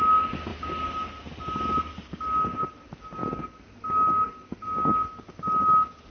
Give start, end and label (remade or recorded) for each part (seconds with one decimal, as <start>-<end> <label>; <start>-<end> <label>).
0.0-6.1 recorded